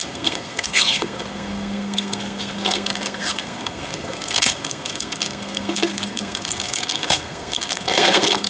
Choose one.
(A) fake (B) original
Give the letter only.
A